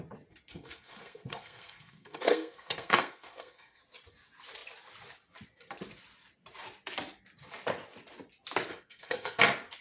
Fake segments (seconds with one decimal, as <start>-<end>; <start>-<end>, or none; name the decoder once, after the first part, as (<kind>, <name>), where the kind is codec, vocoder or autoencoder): 0.5-3.8 (codec, SNAC); 8.7-9.4